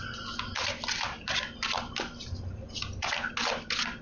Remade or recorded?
recorded